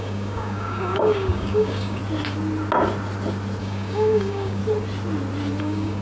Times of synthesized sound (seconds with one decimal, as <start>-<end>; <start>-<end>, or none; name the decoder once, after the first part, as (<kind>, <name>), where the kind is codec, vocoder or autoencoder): 0.0-2.0 (codec, DAC); 3.6-4.6; 5.6-6.0